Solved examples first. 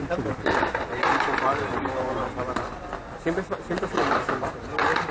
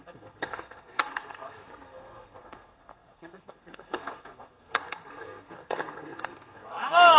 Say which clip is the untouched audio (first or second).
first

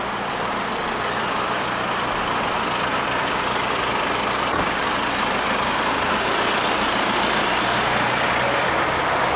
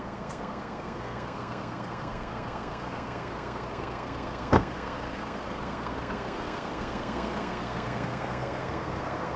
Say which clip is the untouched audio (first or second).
first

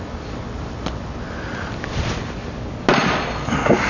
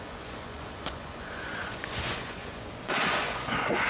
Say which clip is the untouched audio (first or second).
first